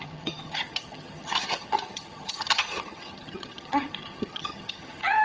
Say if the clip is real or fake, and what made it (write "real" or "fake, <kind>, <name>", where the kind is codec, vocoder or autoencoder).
fake, vocoder, HiFi-GAN